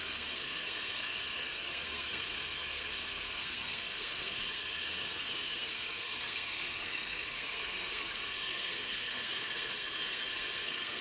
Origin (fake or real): fake